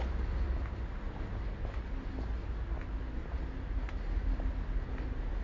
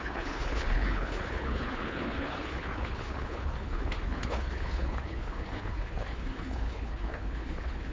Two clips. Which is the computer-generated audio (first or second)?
second